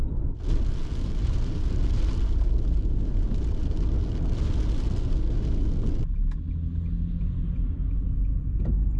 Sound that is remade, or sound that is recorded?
recorded